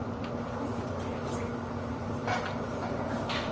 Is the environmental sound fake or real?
real